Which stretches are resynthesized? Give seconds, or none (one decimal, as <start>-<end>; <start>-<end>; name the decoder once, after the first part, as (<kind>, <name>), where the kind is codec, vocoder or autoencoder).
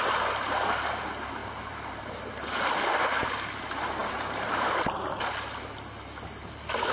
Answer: 1.4-2.3 (vocoder, BigVGAN v2); 4.0-4.8